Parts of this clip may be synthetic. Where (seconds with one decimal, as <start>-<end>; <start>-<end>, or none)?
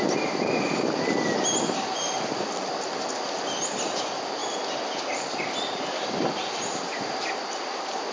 none